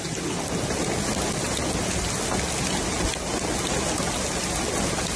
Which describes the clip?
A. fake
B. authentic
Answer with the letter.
B